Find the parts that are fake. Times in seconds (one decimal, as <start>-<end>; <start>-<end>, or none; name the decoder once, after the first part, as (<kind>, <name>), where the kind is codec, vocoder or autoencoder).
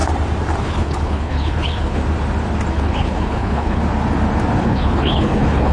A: 0.6-2.0 (codec, HILCodec); 2.7-3.8; 4.6-5.7